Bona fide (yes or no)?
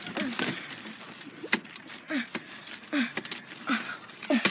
yes